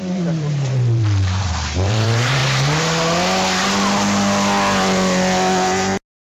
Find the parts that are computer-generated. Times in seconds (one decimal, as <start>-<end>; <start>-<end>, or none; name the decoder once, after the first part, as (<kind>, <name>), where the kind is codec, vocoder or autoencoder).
0.0-2.4 (vocoder, BigVGAN v2)